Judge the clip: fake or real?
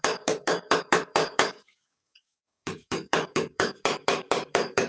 fake